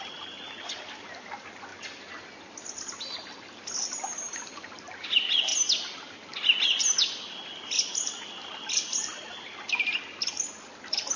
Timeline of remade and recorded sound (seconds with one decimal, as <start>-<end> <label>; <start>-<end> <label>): 0.0-11.2 recorded